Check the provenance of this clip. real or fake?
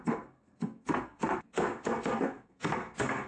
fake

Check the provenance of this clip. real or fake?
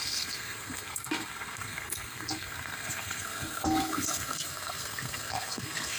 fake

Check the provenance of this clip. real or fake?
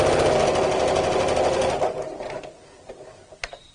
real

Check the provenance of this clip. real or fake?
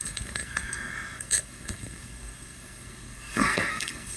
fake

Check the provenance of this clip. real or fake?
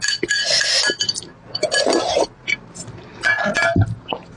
real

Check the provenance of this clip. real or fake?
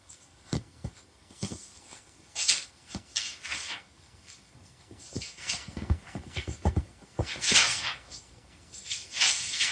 fake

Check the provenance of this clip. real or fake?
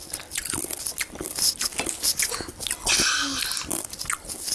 real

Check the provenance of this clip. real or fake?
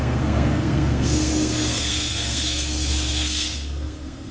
fake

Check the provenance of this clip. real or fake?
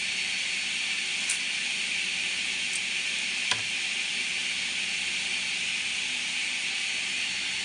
real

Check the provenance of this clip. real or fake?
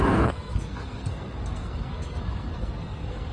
fake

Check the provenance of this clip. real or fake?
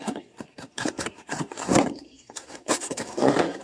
fake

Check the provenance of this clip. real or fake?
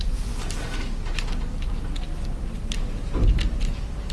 real